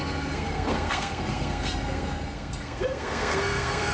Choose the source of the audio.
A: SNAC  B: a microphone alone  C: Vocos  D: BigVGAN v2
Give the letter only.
A